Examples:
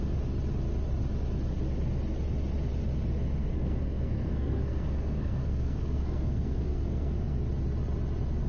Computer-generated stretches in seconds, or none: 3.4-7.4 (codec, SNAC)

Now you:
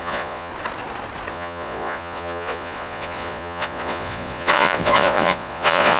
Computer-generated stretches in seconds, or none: 0.0-0.5 (vocoder, Vocos); 1.3-6.0

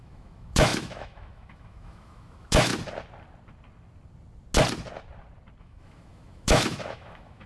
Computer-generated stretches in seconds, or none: 0.0-2.7 (autoencoder, DAC-VAE); 5.6-7.5

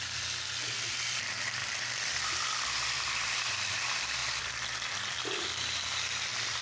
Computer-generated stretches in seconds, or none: 1.6-3.3 (vocoder, BigVGAN v2)

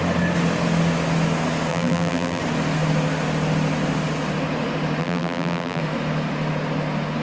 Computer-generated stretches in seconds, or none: 1.7-2.4 (vocoder, BigVGAN v2); 5.0-5.8

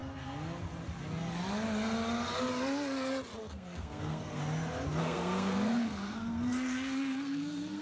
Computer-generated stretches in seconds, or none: 3.4-4.4 (codec, SNAC); 5.0-7.8

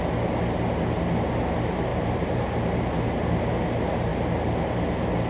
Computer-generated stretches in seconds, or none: 1.9-2.5 (vocoder, BigVGAN v2)

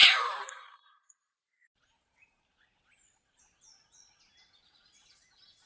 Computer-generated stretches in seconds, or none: 0.0-3.4 (vocoder, BigVGAN v2)